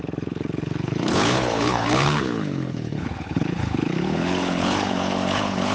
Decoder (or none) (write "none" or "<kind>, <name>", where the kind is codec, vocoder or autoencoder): codec, HILCodec